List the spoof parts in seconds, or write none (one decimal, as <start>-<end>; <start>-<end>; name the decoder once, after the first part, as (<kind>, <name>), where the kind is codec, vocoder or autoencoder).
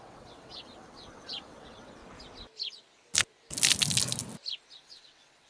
0.0-2.0 (vocoder, WaveNeXt); 4.8-5.5